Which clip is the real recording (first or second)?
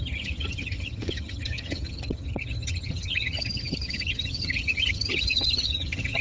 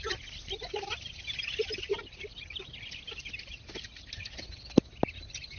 second